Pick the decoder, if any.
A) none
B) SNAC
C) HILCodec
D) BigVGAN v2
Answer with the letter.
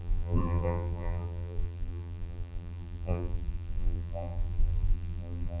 D